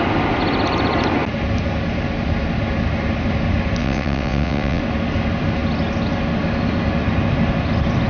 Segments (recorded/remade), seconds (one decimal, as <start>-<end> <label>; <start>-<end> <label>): 0.0-3.8 recorded; 3.8-4.8 remade; 4.8-8.1 recorded